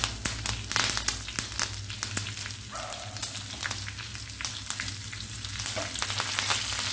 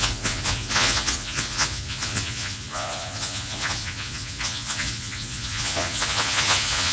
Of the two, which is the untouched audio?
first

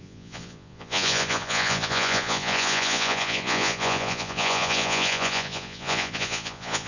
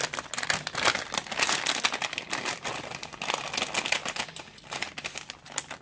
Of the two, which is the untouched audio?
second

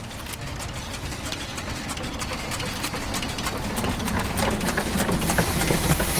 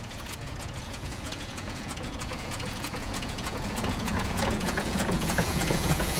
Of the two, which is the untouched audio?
first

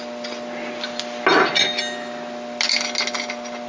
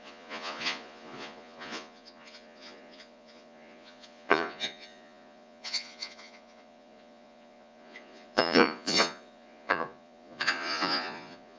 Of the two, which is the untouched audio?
first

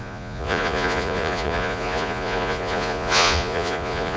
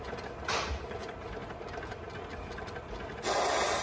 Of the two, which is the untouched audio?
second